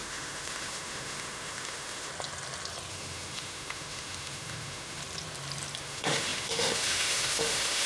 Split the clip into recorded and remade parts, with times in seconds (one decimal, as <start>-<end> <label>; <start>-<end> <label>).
0.0-2.1 remade; 2.1-2.9 recorded; 2.9-5.0 remade; 5.0-5.8 recorded; 5.8-7.9 remade